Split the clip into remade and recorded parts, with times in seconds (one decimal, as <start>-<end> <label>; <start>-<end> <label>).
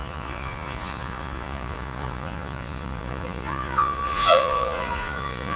0.0-5.6 remade